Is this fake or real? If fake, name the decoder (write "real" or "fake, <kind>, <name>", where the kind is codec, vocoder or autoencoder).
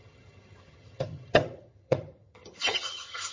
fake, vocoder, HiFi-GAN